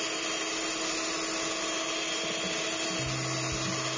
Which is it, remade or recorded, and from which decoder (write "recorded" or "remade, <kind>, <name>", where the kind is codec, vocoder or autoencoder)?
recorded